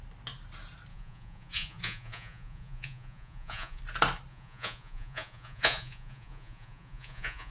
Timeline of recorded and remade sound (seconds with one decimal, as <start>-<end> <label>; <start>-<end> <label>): 0.0-0.9 recorded; 0.9-3.8 remade; 3.8-4.3 recorded; 4.3-7.5 remade